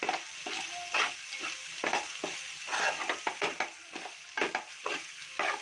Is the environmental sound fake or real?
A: real